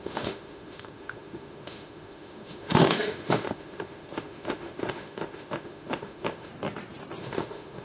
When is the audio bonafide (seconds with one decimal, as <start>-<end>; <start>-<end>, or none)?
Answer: 6.5-7.2